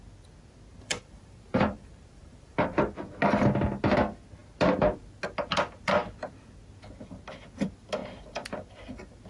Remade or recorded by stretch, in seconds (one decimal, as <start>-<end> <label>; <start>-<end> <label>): 0.0-0.7 recorded; 0.7-2.8 remade; 2.8-9.3 recorded